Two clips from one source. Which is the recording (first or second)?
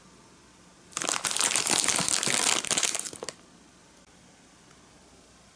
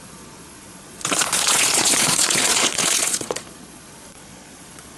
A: first